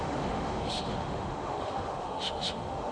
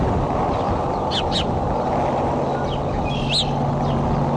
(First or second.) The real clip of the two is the second